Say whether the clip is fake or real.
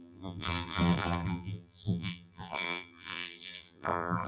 fake